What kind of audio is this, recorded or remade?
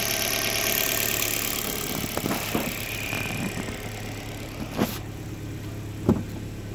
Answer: recorded